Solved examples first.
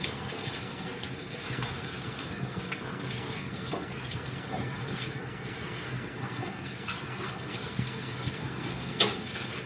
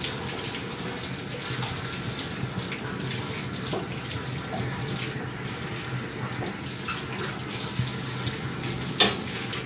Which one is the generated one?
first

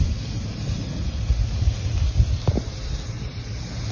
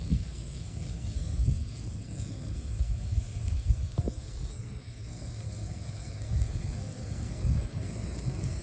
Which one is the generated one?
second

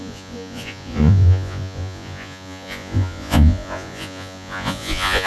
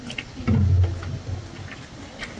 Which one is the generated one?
first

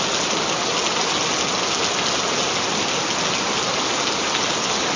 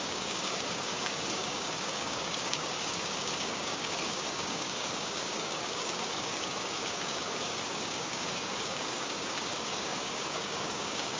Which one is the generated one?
second